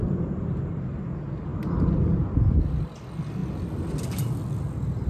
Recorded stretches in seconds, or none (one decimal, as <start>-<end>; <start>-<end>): 0.7-5.1